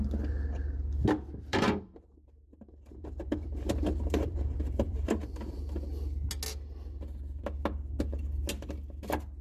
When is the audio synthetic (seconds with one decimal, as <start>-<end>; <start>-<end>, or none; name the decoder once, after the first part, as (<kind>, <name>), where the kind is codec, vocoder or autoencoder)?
1.5-5.6 (vocoder, BigVGAN v2)

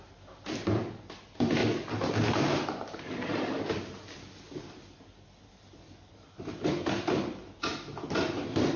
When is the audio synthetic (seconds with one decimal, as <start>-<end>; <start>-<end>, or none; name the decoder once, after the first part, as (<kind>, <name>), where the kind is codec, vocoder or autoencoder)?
1.6-4.1 (vocoder, BigVGAN v2)